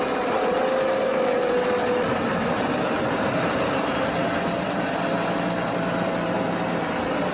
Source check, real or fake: real